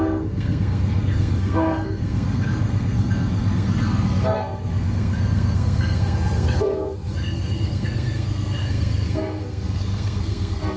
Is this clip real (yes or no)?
no